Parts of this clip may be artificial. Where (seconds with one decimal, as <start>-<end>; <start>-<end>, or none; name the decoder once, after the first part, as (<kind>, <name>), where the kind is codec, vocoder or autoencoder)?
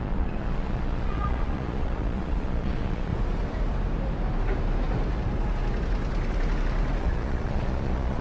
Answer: 0.0-3.1 (vocoder, Vocos); 7.0-8.2